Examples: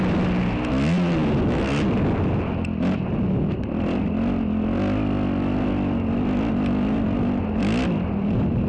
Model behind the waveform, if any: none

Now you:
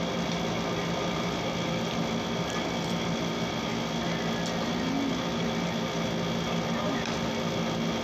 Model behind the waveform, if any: none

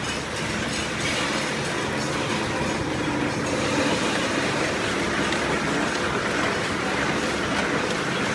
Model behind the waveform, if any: none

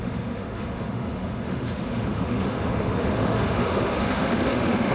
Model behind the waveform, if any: autoencoder, DAC-VAE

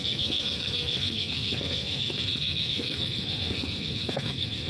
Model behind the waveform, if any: codec, SNAC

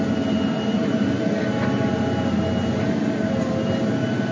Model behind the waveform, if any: none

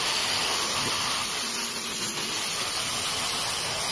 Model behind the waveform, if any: none